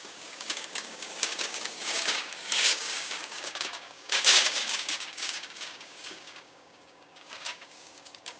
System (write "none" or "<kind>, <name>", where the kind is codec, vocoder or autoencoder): codec, DAC